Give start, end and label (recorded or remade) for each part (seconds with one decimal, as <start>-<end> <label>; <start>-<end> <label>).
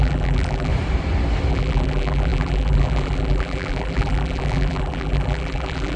0.0-0.7 remade; 0.7-1.5 recorded; 1.5-6.0 remade